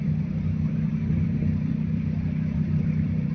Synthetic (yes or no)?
yes